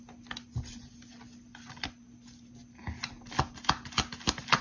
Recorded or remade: recorded